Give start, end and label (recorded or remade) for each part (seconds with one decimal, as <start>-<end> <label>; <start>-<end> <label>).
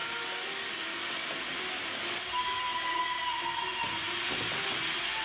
0.0-5.2 recorded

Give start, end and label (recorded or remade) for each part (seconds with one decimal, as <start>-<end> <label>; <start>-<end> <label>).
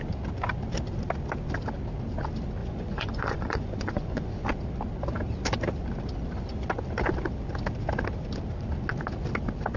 0.0-2.6 recorded; 2.6-4.3 remade; 4.3-9.8 recorded